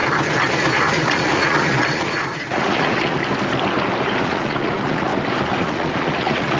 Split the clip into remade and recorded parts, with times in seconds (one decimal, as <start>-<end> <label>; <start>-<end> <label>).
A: 0.0-0.9 recorded; 0.9-3.2 remade; 3.2-4.2 recorded; 4.2-5.1 remade; 5.1-5.6 recorded; 5.6-6.6 remade

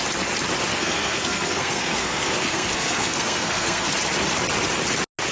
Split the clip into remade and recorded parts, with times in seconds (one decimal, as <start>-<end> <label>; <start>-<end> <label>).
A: 0.0-0.7 recorded; 0.7-3.9 remade; 3.9-5.3 recorded